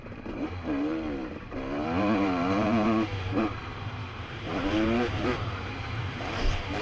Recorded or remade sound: remade